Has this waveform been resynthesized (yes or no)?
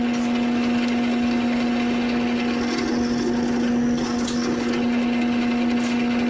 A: no